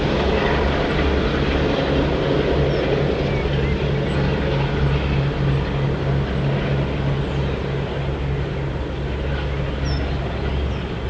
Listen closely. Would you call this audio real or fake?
real